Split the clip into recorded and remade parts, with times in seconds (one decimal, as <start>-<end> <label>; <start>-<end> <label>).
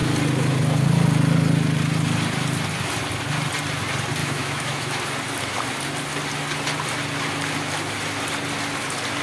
0.0-4.2 recorded; 4.2-5.0 remade; 5.0-9.2 recorded